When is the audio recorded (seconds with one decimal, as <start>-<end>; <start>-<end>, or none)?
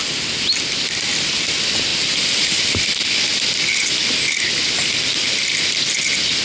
0.0-6.4